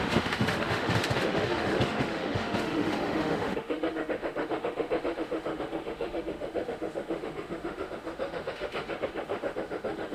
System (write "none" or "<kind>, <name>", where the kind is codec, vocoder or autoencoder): autoencoder, DAC-VAE